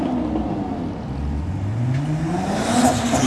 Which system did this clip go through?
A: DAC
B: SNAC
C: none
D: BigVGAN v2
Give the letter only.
C